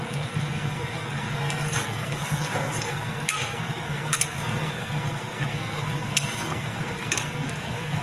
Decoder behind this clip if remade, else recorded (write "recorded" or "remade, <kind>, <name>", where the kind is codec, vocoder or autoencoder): remade, codec, SNAC